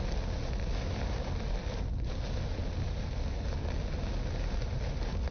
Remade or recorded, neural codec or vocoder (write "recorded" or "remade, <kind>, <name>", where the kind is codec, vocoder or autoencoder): recorded